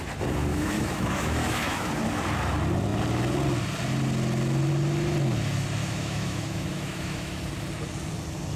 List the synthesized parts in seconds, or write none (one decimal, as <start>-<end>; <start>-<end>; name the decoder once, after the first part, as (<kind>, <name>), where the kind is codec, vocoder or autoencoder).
0.5-1.9 (autoencoder, DAC-VAE); 5.8-7.4